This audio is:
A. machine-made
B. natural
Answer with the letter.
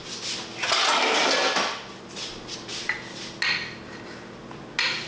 B